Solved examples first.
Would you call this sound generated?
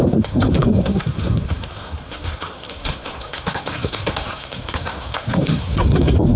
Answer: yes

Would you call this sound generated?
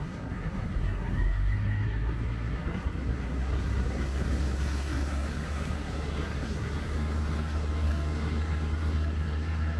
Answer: yes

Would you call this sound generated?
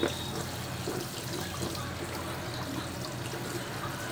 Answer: no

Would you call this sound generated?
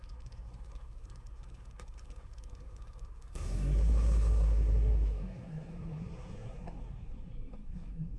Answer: yes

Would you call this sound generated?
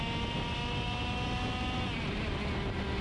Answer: no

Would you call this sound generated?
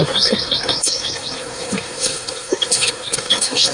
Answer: yes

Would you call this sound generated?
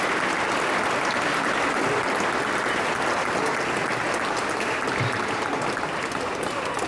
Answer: no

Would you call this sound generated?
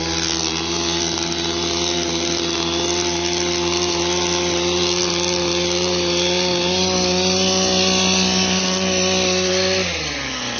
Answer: no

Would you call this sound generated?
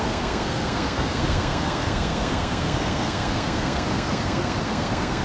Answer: yes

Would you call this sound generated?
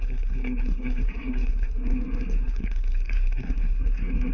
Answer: yes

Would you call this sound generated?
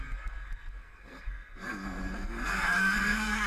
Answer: yes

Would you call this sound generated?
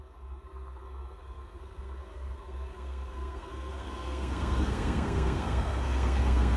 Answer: yes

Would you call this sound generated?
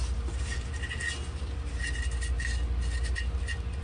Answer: no